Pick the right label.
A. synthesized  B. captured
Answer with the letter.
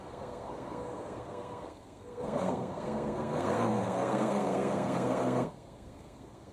A